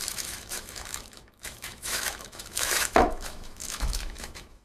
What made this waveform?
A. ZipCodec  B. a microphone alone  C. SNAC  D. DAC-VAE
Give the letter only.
D